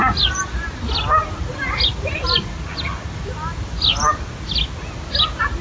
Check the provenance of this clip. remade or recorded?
recorded